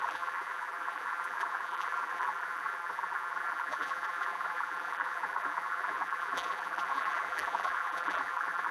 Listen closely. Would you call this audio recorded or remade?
remade